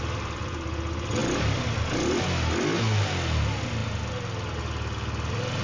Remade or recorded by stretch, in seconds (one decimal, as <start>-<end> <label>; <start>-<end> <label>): 0.0-5.6 recorded